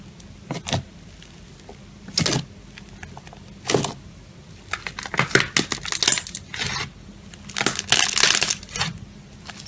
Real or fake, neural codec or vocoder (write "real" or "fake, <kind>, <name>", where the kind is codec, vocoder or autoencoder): real